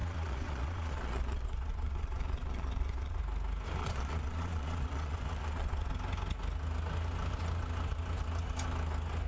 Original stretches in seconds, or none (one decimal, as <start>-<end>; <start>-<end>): 3.2-3.8; 5.9-9.3